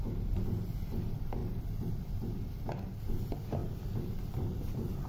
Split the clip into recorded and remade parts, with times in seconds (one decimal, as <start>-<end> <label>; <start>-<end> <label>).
0.0-5.1 recorded